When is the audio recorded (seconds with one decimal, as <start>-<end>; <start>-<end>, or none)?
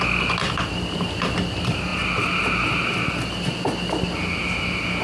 0.0-5.0